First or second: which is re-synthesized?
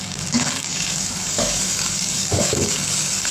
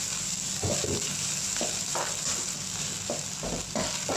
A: first